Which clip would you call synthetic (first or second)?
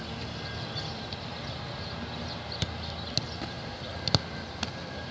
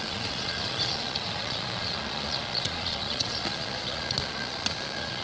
second